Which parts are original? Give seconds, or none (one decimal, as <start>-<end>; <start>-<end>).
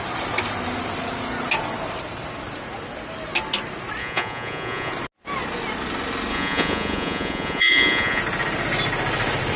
0.0-4.0; 4.9-6.3; 8.2-9.6